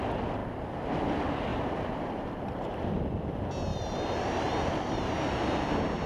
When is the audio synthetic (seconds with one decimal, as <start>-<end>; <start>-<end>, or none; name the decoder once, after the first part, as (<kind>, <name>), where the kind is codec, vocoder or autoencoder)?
1.5-2.9 (vocoder, BigVGAN v2); 3.7-5.1